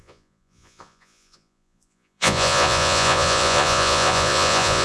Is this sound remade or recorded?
remade